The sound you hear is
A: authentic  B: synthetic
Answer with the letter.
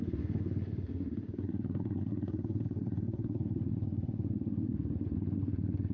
B